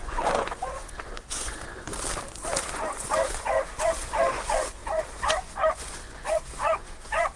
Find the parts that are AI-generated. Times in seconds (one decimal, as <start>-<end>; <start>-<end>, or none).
0.0-1.9; 2.6-7.4